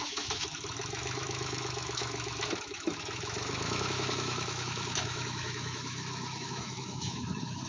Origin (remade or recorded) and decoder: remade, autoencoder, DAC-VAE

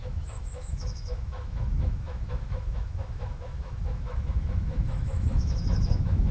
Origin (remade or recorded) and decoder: remade, autoencoder, DAC-VAE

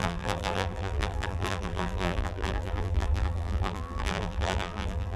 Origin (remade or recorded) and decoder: remade, vocoder, BigVGAN v2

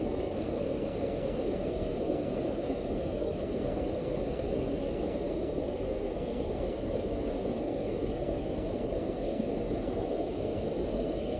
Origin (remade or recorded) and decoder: remade, codec, SNAC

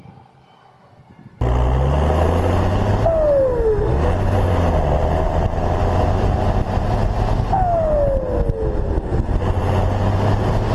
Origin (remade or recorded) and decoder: recorded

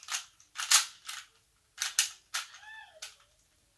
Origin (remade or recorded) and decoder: recorded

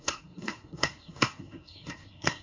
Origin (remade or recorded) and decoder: remade, codec, SNAC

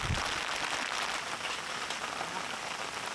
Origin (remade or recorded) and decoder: recorded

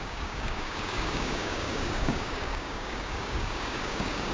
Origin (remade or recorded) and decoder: remade, codec, DAC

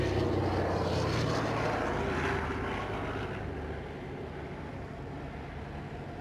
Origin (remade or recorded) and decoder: recorded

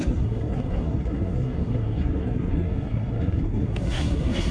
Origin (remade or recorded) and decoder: remade, codec, SNAC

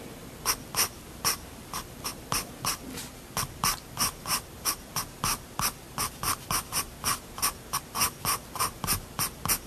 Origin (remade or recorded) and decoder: recorded